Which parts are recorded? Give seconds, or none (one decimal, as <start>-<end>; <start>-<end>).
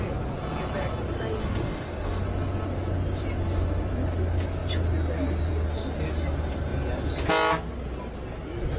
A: 0.0-1.4; 2.2-8.8